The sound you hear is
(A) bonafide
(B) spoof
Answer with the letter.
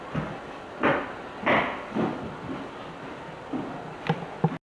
A